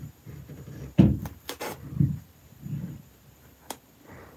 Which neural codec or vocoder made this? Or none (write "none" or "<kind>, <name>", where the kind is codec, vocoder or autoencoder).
vocoder, BigVGAN v2